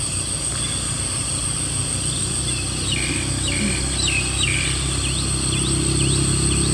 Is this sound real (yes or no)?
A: yes